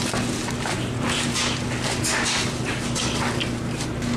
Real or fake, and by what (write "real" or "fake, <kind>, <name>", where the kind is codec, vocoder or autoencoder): real